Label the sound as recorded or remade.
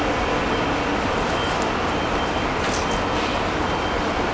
recorded